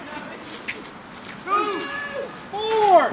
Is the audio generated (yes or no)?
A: no